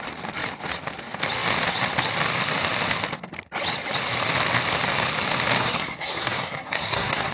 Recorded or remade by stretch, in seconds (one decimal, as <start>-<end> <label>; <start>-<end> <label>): 0.0-5.6 recorded; 5.6-7.3 remade